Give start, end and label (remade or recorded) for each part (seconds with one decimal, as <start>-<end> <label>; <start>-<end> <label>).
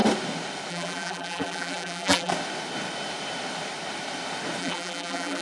0.0-0.7 recorded; 0.7-2.3 remade; 2.3-4.6 recorded; 4.6-5.4 remade